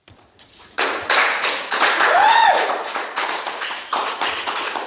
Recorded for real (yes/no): no